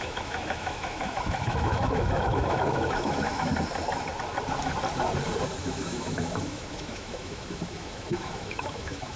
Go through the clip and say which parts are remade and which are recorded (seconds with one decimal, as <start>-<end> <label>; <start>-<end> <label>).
0.0-3.5 remade; 3.5-5.6 recorded; 5.6-9.2 remade